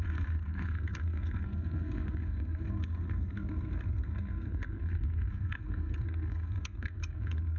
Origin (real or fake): fake